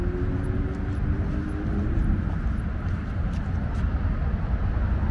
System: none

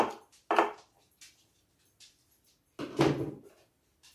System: none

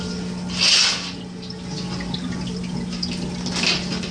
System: none